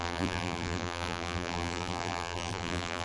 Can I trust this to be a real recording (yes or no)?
no